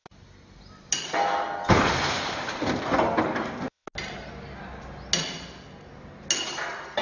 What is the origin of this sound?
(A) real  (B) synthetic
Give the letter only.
A